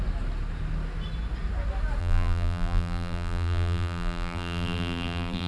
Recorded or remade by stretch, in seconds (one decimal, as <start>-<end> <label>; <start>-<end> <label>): 0.0-2.0 recorded; 2.0-5.5 remade